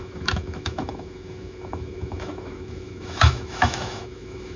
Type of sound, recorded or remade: remade